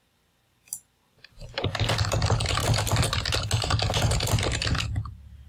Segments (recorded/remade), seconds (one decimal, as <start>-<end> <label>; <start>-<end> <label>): 0.0-5.5 recorded